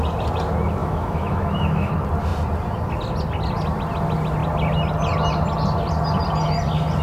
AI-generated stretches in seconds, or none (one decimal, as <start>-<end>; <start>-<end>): 0.8-1.9

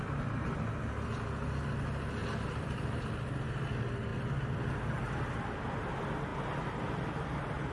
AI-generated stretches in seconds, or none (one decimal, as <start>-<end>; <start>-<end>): 2.2-3.0; 4.1-5.0

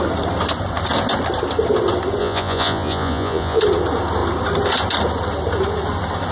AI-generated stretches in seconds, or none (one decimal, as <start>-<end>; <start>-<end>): 2.2-3.6

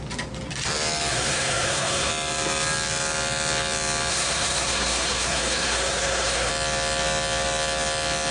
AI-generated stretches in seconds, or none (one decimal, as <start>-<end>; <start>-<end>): 1.1-2.1; 4.1-6.5

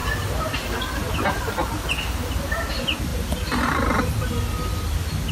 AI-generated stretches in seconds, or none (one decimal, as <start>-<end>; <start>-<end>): none